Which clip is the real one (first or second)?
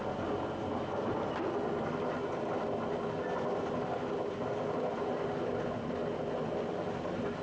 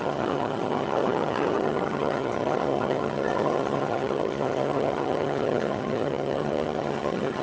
first